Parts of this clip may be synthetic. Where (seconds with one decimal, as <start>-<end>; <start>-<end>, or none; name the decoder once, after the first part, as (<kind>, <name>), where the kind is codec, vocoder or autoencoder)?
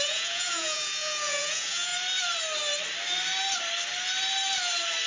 0.0-1.9 (vocoder, Vocos)